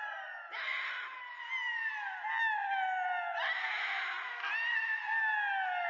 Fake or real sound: real